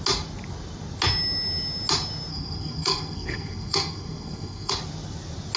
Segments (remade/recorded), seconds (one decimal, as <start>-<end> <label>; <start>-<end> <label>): 0.0-2.3 recorded; 2.3-4.7 remade; 4.7-5.6 recorded